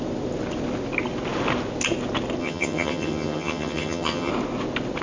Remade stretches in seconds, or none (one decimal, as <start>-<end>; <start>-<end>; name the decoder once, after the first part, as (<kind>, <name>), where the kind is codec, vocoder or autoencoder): 2.4-4.3 (vocoder, HiFi-GAN)